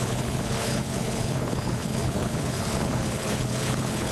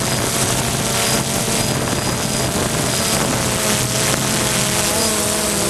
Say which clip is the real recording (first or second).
second